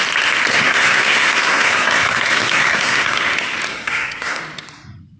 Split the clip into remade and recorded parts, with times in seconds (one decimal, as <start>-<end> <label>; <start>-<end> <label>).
0.0-0.5 recorded; 0.5-3.2 remade; 3.2-3.7 recorded; 3.7-4.4 remade; 4.4-5.2 recorded